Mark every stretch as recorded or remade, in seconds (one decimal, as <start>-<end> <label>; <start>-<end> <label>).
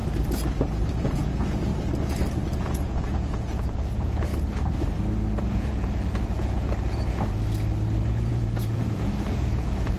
0.0-0.9 recorded; 0.9-1.7 remade; 1.7-2.6 recorded; 2.6-4.3 remade; 4.3-5.4 recorded; 5.4-7.4 remade; 7.4-8.3 recorded; 8.3-10.0 remade